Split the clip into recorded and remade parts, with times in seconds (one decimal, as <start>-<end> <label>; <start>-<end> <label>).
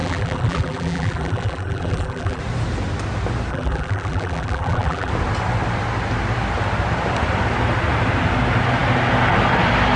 0.0-2.4 remade; 2.4-3.5 recorded; 3.5-5.1 remade; 5.1-10.0 recorded